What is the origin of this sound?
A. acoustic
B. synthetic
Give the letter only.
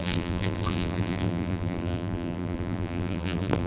B